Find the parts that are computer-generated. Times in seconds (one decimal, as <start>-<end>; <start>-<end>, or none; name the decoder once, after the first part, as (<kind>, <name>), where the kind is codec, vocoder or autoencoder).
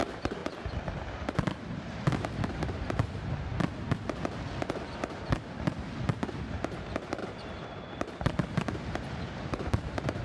0.0-0.4 (vocoder, BigVGAN v2); 1.6-3.5; 6.3-10.2